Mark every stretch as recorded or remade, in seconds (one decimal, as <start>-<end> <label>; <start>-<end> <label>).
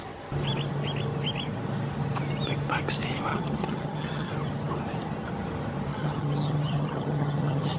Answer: 0.0-3.3 recorded; 3.3-4.3 remade; 4.3-5.9 recorded; 5.9-7.8 remade